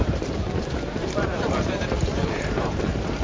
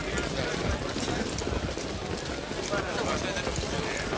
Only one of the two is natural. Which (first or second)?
second